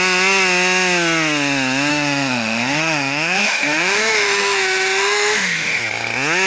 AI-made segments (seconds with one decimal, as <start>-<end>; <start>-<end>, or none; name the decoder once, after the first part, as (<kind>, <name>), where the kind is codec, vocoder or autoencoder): 1.9-5.8 (autoencoder, DAC-VAE)